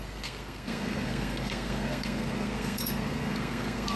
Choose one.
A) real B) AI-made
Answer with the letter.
B